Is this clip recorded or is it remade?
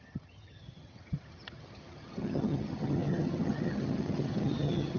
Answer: remade